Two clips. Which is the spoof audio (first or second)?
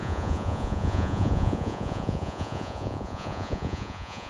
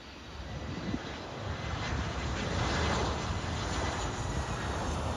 first